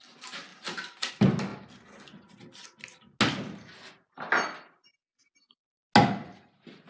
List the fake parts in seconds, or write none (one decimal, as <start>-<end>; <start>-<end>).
0.5-1.1